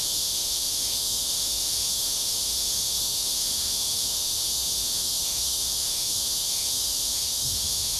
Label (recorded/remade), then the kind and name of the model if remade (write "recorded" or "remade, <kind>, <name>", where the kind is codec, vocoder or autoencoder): remade, autoencoder, DAC-VAE